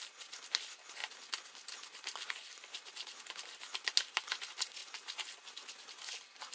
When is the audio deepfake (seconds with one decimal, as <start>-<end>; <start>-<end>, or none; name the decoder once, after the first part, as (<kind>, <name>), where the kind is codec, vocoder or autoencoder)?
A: none

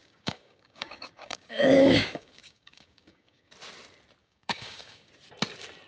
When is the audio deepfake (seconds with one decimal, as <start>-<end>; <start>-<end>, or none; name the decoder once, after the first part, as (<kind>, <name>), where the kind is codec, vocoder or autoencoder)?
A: 0.0-3.5 (codec, DAC); 4.2-5.1

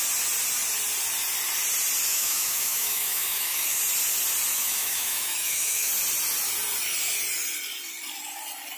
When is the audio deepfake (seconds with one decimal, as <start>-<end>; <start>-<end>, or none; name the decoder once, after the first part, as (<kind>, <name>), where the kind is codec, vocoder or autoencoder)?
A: 2.1-3.8 (autoencoder, DAC-VAE); 4.5-5.9

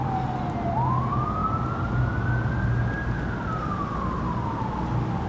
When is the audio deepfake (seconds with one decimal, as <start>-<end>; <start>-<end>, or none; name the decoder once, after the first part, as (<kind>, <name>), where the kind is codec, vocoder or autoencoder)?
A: none

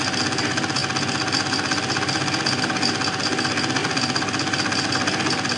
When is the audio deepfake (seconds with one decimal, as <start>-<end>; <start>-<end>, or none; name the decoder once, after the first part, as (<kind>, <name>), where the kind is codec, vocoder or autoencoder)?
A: none

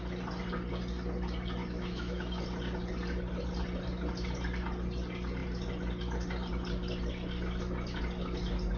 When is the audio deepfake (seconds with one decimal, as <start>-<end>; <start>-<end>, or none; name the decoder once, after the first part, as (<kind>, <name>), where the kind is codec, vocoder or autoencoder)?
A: 1.6-2.4 (autoencoder, DAC-VAE)

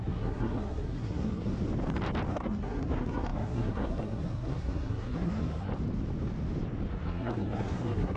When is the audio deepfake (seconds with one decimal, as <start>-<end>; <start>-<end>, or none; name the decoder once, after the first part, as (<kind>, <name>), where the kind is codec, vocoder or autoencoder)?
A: 0.0-1.5 (codec, SNAC); 2.3-5.7; 6.9-8.2

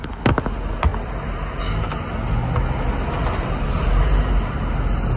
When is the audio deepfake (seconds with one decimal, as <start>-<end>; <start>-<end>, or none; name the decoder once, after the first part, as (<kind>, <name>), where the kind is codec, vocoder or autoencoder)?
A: none